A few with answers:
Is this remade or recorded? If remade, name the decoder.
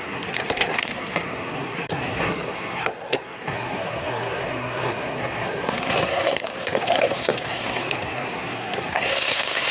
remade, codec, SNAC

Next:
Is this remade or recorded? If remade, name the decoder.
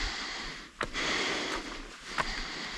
recorded